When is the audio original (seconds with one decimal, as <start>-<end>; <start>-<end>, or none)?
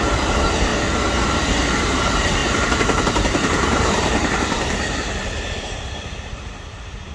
0.7-1.7